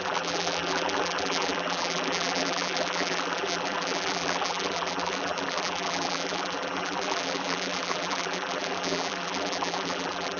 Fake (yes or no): yes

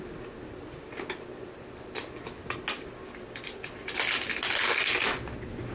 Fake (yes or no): no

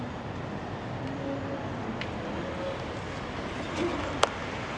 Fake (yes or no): no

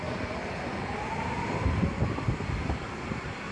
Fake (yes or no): yes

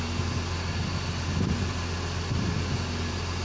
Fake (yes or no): no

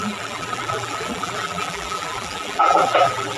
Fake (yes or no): yes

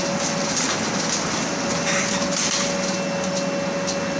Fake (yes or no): no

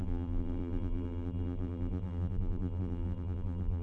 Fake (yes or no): yes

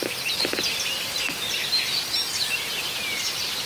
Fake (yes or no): no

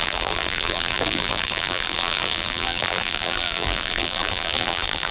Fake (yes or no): yes